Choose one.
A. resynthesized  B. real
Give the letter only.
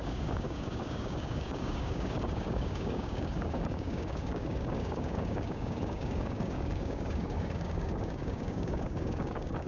A